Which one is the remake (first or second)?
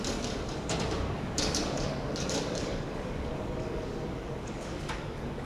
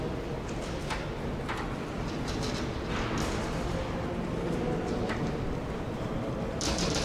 first